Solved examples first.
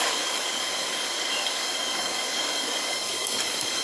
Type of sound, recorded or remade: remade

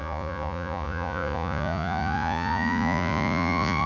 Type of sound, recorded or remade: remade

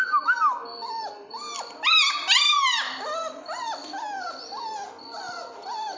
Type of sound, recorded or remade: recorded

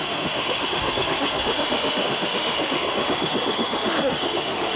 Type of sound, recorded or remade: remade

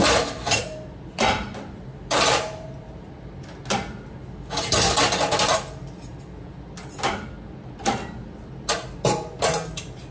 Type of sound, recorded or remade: recorded